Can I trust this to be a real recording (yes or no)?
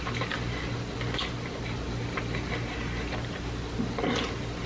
no